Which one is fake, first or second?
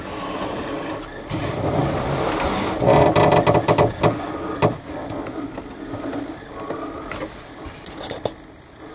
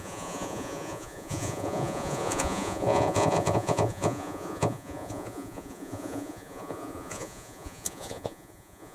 second